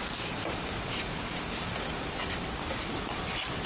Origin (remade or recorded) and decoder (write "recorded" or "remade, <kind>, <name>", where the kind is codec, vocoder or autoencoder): recorded